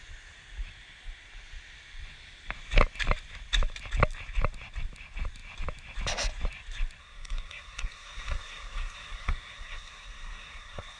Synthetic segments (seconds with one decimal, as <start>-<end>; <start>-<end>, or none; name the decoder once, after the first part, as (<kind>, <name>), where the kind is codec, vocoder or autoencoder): 7.0-11.0 (codec, SNAC)